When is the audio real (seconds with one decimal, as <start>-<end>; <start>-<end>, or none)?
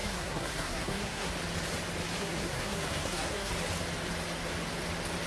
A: 1.3-2.2; 3.5-5.3